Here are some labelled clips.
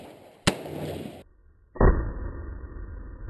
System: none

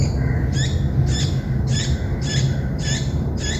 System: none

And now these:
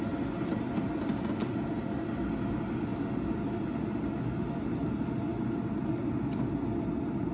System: none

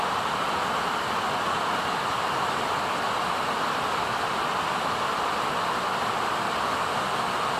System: none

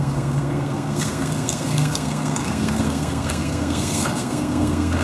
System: codec, SNAC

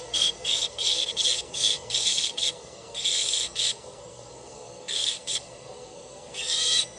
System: codec, SNAC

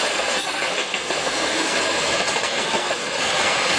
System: codec, SNAC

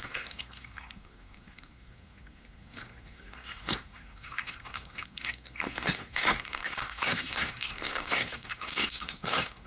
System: codec, SNAC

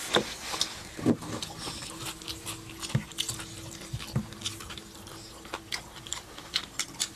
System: none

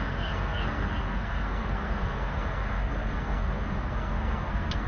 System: codec, SNAC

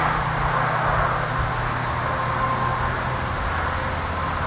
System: none